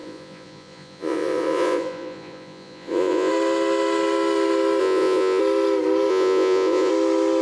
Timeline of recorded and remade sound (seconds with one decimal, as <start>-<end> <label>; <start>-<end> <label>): 0.0-3.3 remade; 3.3-4.8 recorded; 4.8-5.4 remade; 5.4-6.1 recorded; 6.1-6.9 remade; 6.9-7.4 recorded